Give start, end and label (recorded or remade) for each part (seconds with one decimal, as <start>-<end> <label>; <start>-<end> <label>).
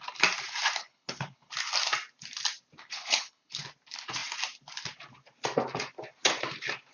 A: 0.0-0.8 recorded; 0.8-1.5 remade; 1.5-2.8 recorded; 2.8-3.6 remade; 3.6-6.9 recorded